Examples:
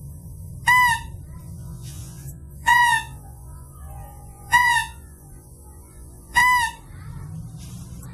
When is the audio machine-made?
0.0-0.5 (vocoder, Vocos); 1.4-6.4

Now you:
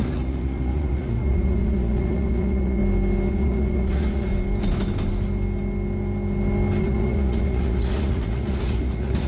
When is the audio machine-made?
0.0-2.8 (vocoder, Vocos); 3.3-4.3; 6.8-9.3

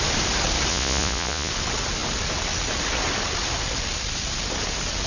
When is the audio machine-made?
0.7-1.5 (vocoder, Vocos)

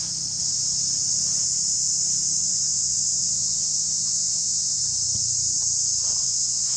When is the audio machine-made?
2.4-4.8 (vocoder, Vocos); 6.2-6.8

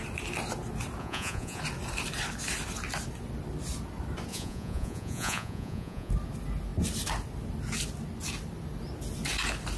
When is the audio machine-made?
1.0-1.6 (vocoder, Vocos); 4.3-6.1

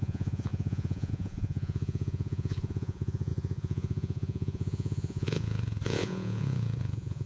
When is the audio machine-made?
0.0-7.3 (vocoder, Vocos)

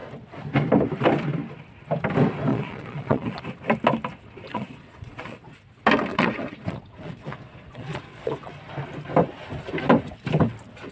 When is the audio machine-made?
2.5-3.4 (vocoder, Vocos); 4.5-5.6; 6.1-8.5